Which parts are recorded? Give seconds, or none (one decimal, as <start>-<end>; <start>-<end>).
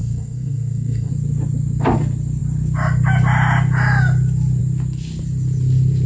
1.1-6.1